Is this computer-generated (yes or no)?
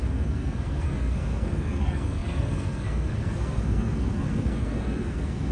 yes